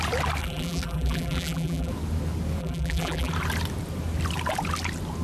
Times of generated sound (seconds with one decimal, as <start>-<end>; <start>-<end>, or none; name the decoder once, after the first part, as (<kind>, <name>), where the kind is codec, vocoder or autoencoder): 0.4-1.9 (vocoder, BigVGAN v2); 2.6-3.3